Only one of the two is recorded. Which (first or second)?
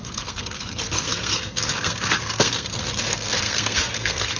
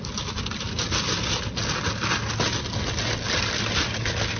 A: second